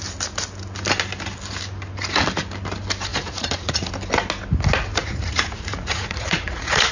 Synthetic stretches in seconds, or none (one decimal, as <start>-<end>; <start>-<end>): 3.1-3.9; 5.0-6.9